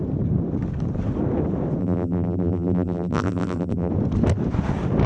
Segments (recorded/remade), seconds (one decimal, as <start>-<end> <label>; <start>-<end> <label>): 0.0-1.8 recorded; 1.8-3.9 remade; 3.9-5.1 recorded

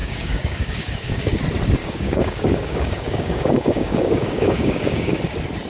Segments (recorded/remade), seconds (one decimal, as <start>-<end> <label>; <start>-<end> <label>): 0.0-1.4 remade; 1.4-1.8 recorded; 1.8-5.2 remade; 5.2-5.7 recorded

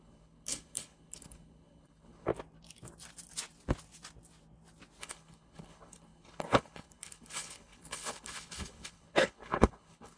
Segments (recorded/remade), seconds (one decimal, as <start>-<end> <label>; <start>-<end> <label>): 0.0-2.3 remade; 2.3-5.0 recorded; 5.0-10.2 remade